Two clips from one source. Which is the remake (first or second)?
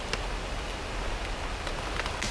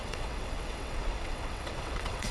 second